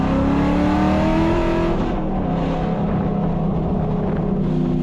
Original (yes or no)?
yes